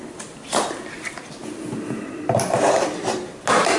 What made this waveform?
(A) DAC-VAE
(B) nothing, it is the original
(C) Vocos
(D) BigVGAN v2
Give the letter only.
B